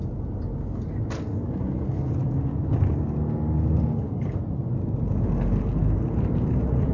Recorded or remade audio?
recorded